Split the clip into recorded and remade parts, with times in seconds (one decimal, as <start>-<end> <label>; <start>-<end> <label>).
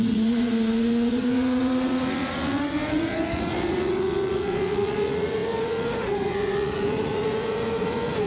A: 0.0-8.3 remade